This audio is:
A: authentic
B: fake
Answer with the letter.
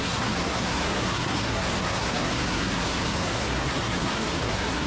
B